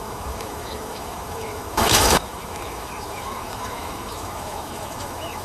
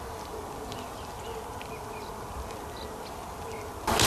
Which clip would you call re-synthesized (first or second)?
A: first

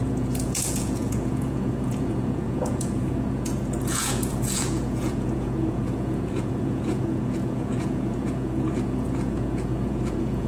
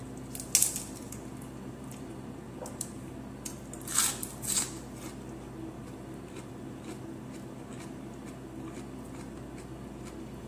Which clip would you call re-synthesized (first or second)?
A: first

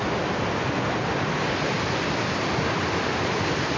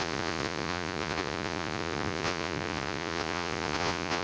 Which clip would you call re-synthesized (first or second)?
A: second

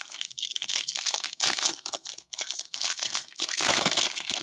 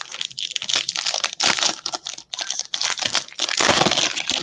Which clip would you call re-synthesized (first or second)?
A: first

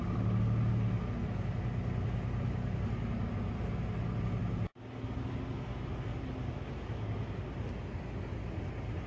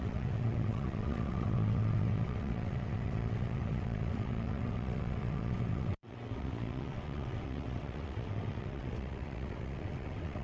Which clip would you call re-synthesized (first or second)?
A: second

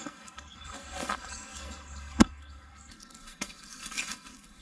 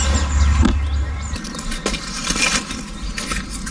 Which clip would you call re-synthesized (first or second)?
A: first